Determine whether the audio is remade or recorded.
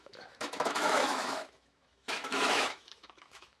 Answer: remade